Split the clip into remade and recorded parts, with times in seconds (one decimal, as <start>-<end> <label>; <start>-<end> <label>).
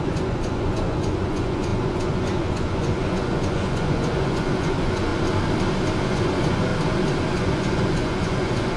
0.0-5.1 remade; 5.1-6.0 recorded; 6.0-6.7 remade; 6.7-7.3 recorded; 7.3-8.8 remade